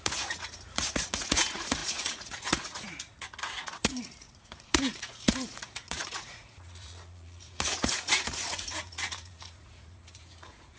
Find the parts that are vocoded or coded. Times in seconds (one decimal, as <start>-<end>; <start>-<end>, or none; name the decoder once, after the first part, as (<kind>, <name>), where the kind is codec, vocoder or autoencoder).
0.0-10.8 (vocoder, Vocos)